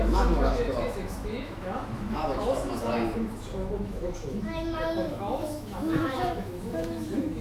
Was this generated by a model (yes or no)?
yes